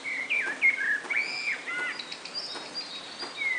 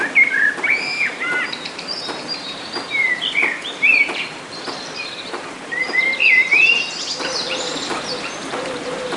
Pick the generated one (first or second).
second